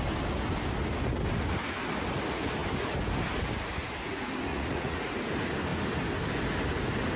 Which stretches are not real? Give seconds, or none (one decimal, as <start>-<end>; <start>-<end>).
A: 4.5-5.1